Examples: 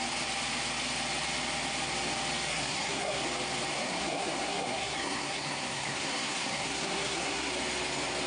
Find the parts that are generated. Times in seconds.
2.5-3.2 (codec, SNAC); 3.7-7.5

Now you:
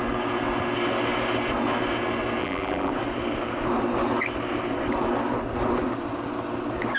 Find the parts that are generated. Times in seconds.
2.4-2.9 (vocoder, BigVGAN v2)

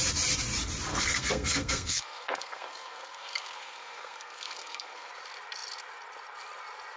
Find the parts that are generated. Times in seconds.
0.9-5.1 (codec, SNAC)

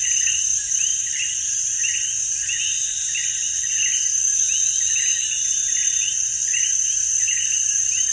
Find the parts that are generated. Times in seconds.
none

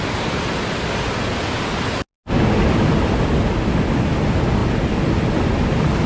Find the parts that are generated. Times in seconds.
none

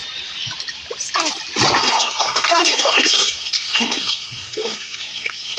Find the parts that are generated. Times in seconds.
1.8-5.6 (codec, SNAC)

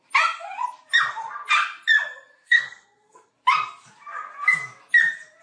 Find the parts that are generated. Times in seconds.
2.3-3.3 (codec, SNAC)

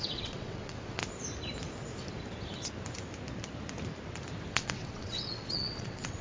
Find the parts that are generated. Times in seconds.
0.0-1.0 (vocoder, WaveNeXt); 4.5-6.2